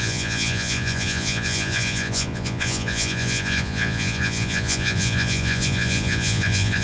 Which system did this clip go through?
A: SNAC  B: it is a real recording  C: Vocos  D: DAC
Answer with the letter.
C